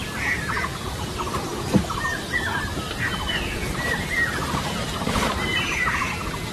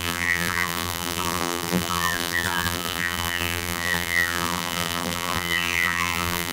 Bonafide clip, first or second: first